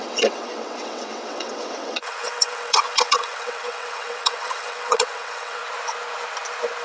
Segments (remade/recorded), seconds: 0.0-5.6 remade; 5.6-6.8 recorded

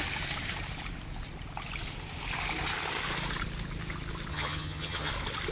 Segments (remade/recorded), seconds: 0.0-4.3 recorded; 4.3-5.1 remade; 5.1-5.5 recorded

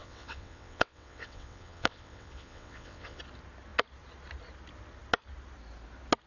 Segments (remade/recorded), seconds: 0.0-3.2 remade; 3.2-6.3 recorded

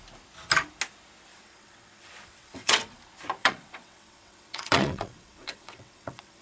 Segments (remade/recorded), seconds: 0.0-1.3 recorded; 1.3-3.0 remade; 3.0-3.4 recorded; 3.4-6.4 remade

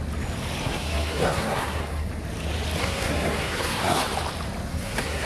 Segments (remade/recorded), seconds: 0.0-0.6 recorded; 0.6-2.1 remade; 2.1-2.8 recorded; 2.8-4.0 remade; 4.0-4.7 recorded; 4.7-5.3 remade

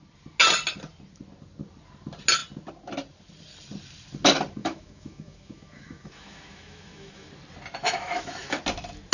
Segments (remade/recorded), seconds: 0.0-4.6 recorded; 4.6-7.3 remade; 7.3-7.8 recorded; 7.8-8.6 remade; 8.6-9.1 recorded